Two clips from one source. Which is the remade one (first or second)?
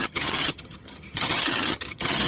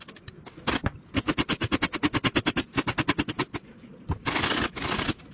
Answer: first